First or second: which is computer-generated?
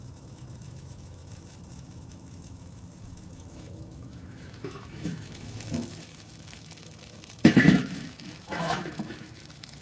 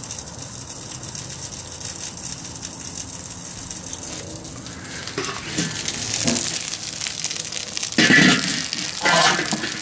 first